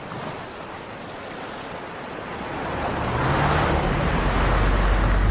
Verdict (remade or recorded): recorded